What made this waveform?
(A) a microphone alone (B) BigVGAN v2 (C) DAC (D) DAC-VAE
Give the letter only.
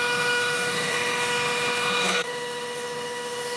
D